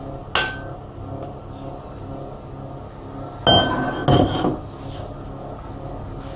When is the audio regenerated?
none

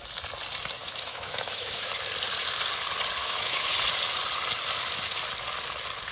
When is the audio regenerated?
0.8-1.9 (autoencoder, DAC-VAE); 3.2-3.7

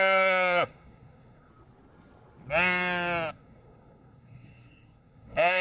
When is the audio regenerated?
0.0-1.5 (codec, SNAC); 3.3-5.6

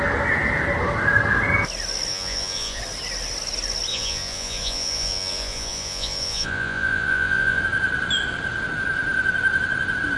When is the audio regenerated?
2.1-2.8 (vocoder, Vocos); 3.9-7.6

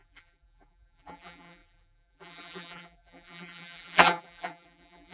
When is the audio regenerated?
0.0-5.1 (vocoder, BigVGAN v2)

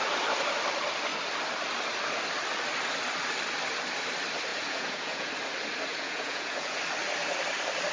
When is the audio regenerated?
4.5-5.3 (vocoder, Vocos); 5.9-6.8